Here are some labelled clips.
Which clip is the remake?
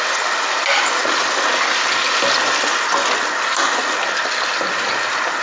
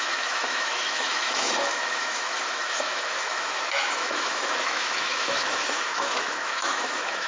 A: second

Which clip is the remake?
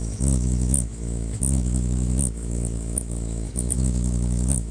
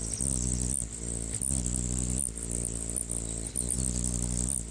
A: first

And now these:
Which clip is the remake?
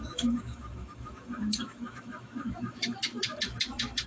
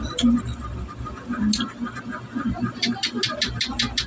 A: first